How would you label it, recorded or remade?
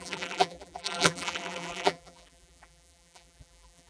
remade